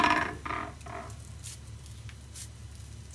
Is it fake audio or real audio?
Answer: real